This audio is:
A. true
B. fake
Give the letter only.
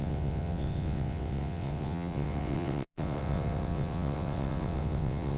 B